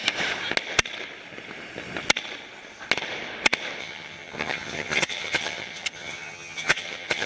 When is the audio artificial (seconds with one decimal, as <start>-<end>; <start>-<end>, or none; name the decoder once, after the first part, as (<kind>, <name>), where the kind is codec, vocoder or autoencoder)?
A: 3.8-7.3 (vocoder, HiFi-GAN)